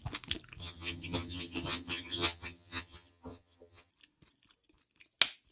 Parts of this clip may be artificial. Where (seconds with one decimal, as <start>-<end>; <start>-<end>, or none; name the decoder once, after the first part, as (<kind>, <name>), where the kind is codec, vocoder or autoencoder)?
0.6-3.9 (vocoder, HiFi-GAN)